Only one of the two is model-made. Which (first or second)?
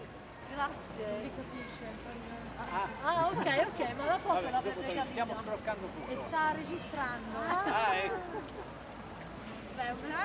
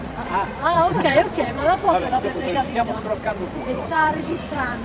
second